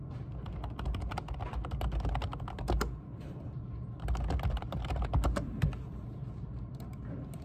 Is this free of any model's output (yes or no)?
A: yes